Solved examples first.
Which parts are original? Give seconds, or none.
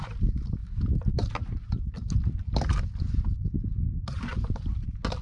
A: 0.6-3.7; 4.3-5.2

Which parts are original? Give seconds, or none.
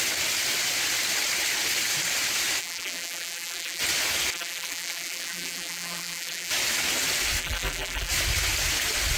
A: 0.0-2.6; 3.8-4.3; 6.5-7.4; 8.1-9.2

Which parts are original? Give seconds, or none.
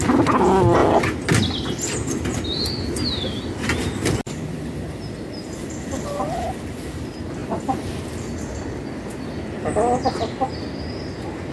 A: 0.0-11.5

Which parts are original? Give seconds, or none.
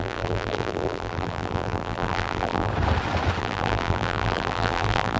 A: 2.7-3.4